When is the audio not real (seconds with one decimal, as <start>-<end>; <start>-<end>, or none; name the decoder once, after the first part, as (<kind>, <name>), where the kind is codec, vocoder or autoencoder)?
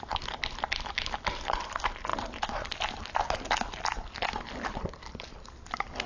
none